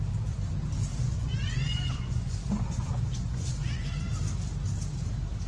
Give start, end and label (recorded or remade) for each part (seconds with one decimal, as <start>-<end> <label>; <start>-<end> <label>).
0.0-0.9 recorded; 0.9-3.9 remade; 3.9-5.5 recorded